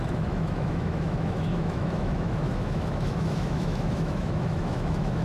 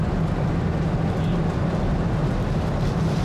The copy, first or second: first